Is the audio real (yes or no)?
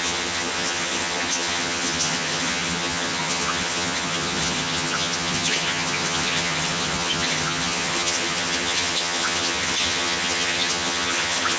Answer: no